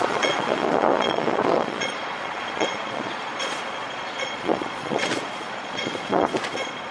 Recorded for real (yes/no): no